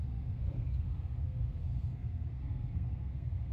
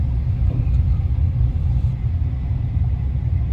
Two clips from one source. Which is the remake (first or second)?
first